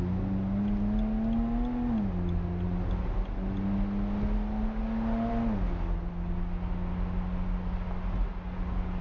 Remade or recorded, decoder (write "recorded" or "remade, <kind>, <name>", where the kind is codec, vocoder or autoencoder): recorded